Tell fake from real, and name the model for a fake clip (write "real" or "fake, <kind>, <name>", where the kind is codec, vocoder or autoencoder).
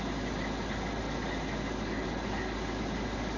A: real